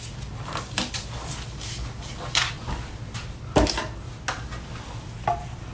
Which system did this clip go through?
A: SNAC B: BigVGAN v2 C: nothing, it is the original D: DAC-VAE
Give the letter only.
C